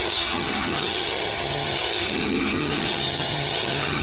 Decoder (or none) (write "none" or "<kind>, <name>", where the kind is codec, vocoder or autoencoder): vocoder, HiFi-GAN